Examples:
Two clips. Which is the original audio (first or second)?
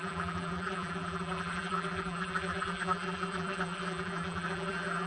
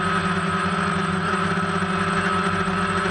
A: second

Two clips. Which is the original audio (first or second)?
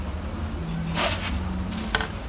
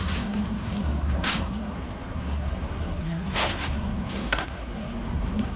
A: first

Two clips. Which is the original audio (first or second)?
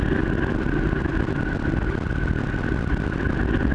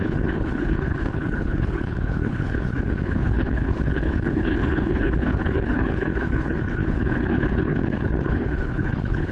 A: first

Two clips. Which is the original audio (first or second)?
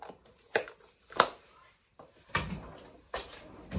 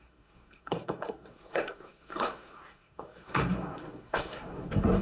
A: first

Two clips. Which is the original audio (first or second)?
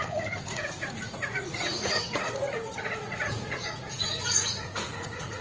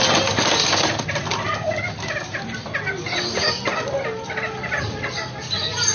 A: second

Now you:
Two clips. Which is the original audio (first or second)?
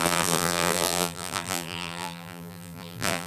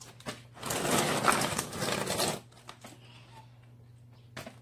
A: second